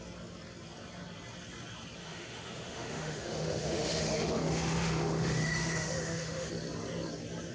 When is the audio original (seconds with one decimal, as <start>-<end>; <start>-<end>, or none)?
0.0-2.0; 6.5-7.5